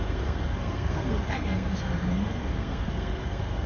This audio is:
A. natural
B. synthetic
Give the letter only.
B